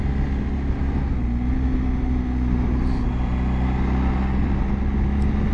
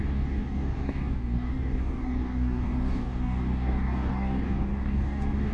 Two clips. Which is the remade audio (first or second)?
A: second